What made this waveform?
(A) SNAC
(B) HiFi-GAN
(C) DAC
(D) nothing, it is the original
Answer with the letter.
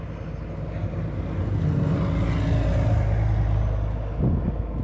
D